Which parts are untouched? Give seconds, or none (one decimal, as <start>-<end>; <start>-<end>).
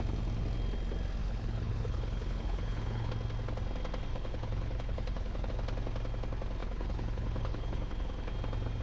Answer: 0.0-1.2; 3.1-4.1; 5.5-6.6; 8.3-8.8